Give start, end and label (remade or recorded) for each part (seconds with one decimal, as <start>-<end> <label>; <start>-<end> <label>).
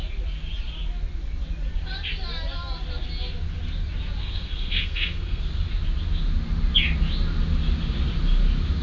0.0-4.2 recorded; 4.2-5.4 remade; 5.4-8.8 recorded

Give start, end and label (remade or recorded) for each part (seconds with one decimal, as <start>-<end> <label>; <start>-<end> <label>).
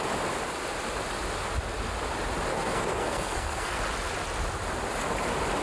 0.0-2.5 recorded; 2.5-3.8 remade; 3.8-5.6 recorded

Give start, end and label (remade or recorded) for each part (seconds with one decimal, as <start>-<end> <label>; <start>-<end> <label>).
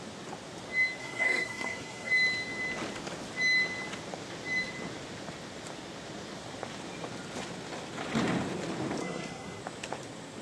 0.0-1.0 recorded; 1.0-2.1 remade; 2.1-9.0 recorded; 9.0-9.6 remade; 9.6-10.4 recorded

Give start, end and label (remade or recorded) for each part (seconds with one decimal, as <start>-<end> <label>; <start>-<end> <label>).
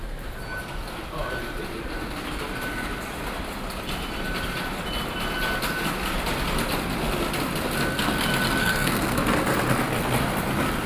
0.0-8.6 recorded; 8.6-9.2 remade; 9.2-10.9 recorded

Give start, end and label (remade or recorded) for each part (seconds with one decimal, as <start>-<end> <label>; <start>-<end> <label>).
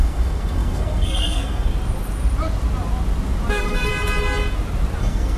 0.0-1.7 remade; 1.7-3.5 recorded; 3.5-3.9 remade; 3.9-5.0 recorded; 5.0-5.4 remade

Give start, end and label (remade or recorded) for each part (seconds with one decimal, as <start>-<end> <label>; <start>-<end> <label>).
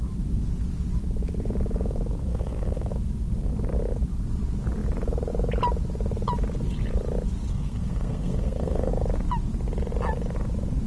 0.0-2.2 recorded; 2.2-2.9 remade; 2.9-7.5 recorded; 7.5-8.9 remade; 8.9-10.9 recorded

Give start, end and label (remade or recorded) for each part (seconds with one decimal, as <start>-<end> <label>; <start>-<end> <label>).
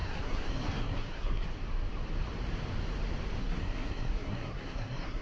0.0-1.5 remade; 1.5-3.4 recorded; 3.4-5.2 remade